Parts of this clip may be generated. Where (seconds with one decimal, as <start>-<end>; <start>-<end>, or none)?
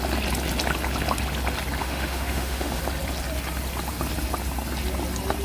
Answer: 1.8-2.8